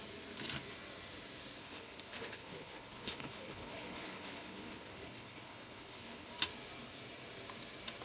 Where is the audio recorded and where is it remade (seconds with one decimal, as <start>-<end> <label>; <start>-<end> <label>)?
0.0-1.6 recorded; 1.6-6.3 remade; 6.3-8.0 recorded